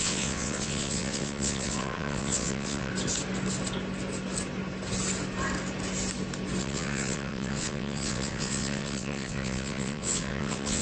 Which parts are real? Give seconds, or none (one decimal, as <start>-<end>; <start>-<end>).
2.9-6.6